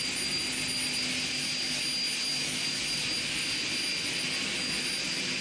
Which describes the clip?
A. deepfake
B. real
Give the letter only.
B